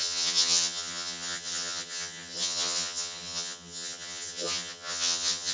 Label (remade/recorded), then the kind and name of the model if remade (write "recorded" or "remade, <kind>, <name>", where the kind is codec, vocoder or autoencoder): remade, vocoder, HiFi-GAN